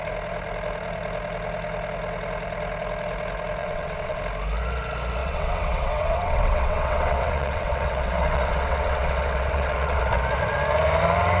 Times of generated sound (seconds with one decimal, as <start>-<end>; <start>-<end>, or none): 3.6-4.2; 5.2-10.0